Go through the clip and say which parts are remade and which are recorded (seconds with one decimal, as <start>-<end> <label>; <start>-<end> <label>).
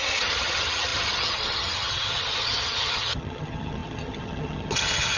0.0-5.2 remade